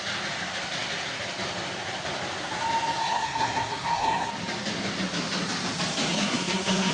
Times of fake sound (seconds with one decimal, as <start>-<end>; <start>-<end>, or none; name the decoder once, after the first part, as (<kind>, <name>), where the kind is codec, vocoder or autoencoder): 3.0-4.3 (codec, SNAC); 6.1-6.9